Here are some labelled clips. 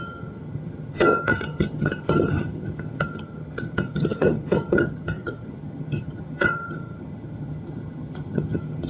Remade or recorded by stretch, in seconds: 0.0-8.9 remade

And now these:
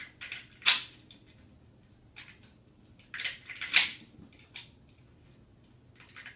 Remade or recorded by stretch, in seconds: 0.0-6.4 recorded

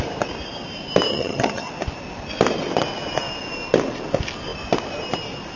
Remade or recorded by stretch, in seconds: 0.0-1.1 recorded; 1.1-1.7 remade; 1.7-5.6 recorded

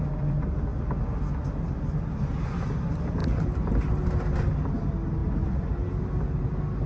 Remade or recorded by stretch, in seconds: 0.0-6.9 recorded